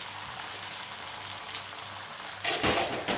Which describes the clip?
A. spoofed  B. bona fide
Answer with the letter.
B